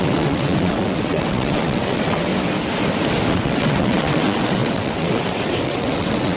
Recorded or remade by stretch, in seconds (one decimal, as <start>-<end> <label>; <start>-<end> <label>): 0.0-2.3 remade; 2.3-3.3 recorded; 3.3-6.4 remade